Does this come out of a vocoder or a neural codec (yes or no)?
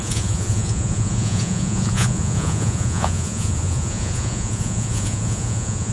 yes